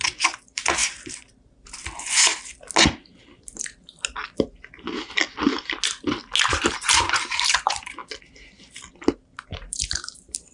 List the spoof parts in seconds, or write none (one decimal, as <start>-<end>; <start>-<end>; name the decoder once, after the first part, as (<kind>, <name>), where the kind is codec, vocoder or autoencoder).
0.0-2.3 (vocoder, BigVGAN v2); 6.8-8.0; 9.1-10.5